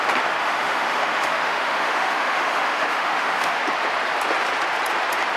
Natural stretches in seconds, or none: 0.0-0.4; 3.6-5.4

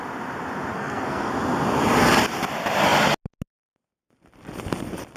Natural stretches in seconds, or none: 0.0-0.7; 1.3-5.2

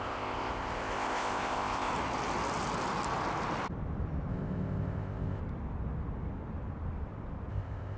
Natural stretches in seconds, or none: 1.9-4.3; 5.4-7.5

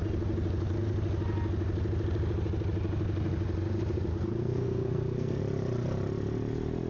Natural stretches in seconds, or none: 0.0-4.1; 5.4-6.9

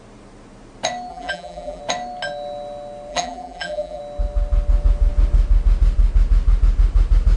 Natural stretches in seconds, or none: 0.0-1.1; 1.8-3.1; 4.0-7.4